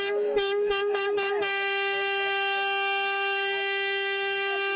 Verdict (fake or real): fake